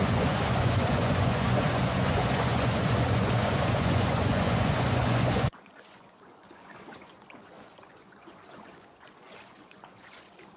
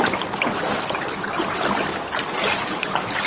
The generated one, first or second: first